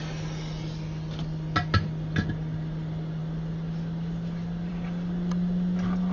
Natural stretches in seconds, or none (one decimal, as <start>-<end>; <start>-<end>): 0.0-6.1